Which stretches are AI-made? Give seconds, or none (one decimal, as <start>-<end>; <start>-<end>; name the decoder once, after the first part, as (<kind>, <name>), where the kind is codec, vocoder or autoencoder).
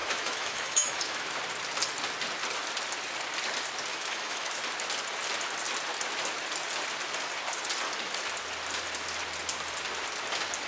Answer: 0.0-1.4 (autoencoder, DAC-VAE); 3.9-4.6